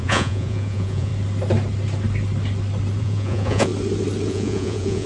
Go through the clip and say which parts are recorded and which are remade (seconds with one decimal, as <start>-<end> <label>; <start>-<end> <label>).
0.0-1.1 remade; 1.1-3.0 recorded; 3.0-3.7 remade; 3.7-4.3 recorded; 4.3-5.1 remade